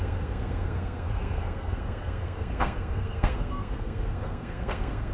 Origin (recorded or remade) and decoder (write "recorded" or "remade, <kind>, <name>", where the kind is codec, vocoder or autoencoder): remade, codec, SNAC